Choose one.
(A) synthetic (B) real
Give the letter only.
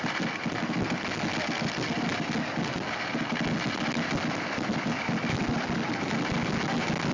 B